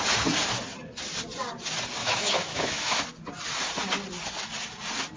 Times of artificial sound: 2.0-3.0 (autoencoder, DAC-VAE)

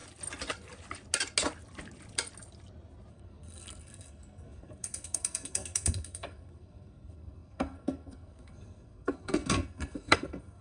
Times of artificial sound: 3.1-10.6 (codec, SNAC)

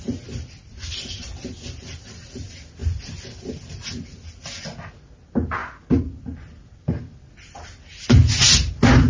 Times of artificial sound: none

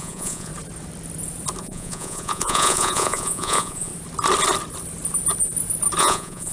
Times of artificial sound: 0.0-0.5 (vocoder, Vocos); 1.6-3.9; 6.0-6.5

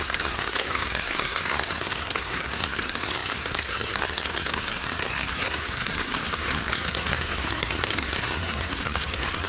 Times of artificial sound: 0.0-9.5 (codec, SNAC)

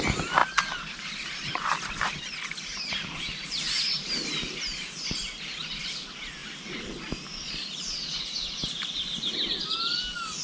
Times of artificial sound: 0.4-2.9 (vocoder, BigVGAN v2)